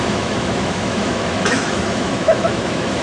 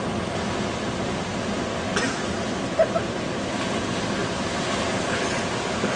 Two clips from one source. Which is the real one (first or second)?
second